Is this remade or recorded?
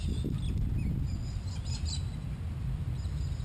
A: recorded